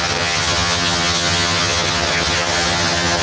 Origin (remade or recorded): remade